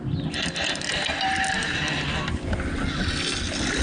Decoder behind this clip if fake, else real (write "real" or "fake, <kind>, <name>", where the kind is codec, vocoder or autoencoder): real